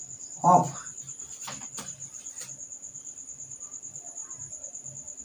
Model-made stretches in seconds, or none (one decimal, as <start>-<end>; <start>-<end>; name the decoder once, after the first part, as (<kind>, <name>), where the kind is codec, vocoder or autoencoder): 0.0-5.2 (vocoder, BigVGAN v2)